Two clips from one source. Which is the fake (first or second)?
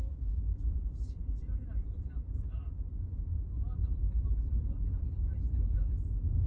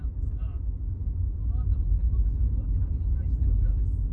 first